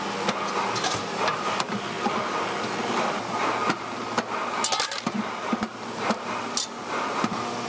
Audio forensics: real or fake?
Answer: real